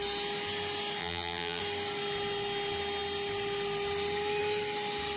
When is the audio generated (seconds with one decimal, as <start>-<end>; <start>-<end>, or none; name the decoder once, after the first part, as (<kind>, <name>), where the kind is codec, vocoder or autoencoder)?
1.0-1.6 (vocoder, BigVGAN v2)